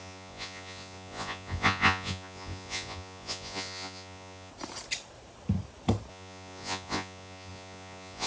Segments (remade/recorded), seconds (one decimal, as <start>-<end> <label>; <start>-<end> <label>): 0.0-4.5 remade; 4.5-6.1 recorded; 6.1-8.3 remade